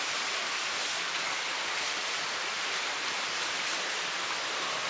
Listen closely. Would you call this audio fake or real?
real